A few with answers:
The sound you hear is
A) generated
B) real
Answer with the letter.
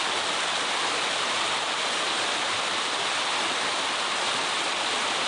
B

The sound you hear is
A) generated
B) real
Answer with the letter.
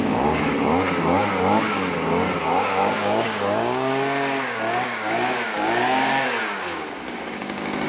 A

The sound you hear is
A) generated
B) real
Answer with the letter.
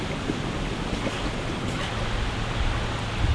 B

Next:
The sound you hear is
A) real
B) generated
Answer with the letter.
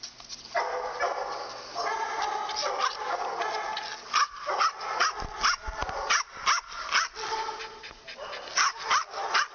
A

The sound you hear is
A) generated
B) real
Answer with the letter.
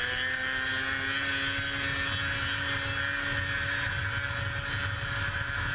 B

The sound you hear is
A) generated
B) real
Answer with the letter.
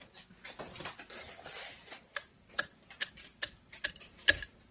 B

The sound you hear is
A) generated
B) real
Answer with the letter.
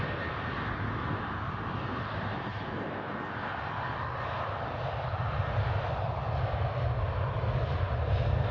B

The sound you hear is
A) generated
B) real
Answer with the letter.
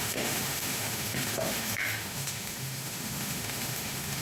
A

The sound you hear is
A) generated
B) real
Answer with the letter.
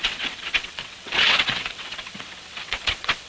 A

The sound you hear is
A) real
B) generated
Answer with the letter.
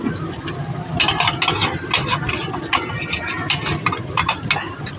A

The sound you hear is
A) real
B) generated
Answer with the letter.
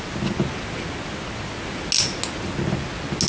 A